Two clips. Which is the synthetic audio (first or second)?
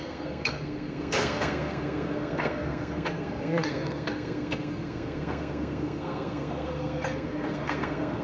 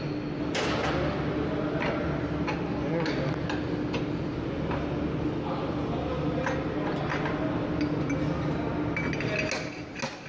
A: first